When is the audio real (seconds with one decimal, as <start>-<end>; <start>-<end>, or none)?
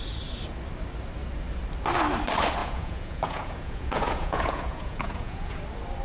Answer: 0.0-2.6; 5.6-6.0